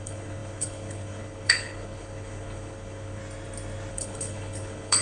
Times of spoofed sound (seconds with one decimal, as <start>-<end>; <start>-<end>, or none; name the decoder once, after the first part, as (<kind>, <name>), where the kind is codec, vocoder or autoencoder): 0.0-3.2 (codec, HILCodec); 3.9-5.0